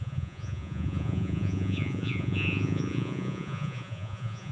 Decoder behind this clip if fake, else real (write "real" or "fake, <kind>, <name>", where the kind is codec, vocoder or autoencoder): fake, vocoder, Vocos